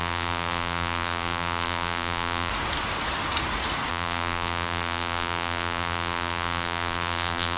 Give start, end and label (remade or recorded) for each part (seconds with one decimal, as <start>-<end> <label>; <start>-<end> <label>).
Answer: 0.0-2.5 remade; 2.5-3.9 recorded; 3.9-7.6 remade